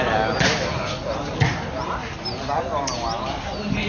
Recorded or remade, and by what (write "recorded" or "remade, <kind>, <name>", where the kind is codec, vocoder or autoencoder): recorded